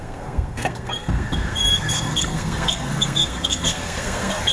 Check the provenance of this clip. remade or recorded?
remade